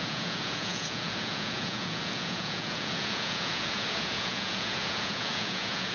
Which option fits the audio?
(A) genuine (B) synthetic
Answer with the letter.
B